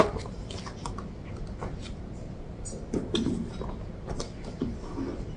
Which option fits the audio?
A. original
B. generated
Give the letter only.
A